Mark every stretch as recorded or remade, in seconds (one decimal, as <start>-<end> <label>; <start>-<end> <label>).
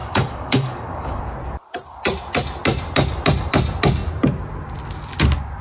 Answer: 0.0-1.2 remade; 1.2-5.6 recorded